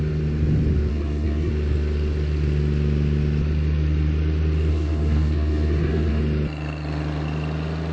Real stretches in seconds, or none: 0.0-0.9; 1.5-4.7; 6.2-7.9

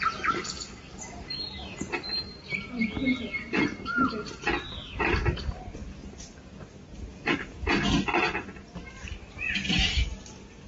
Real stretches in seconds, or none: 0.0-7.1; 7.7-10.7